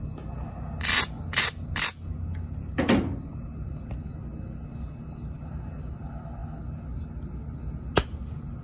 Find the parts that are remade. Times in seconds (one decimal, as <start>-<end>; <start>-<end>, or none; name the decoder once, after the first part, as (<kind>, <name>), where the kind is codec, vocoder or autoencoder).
none